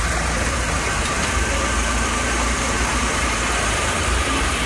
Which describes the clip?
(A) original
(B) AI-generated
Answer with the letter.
B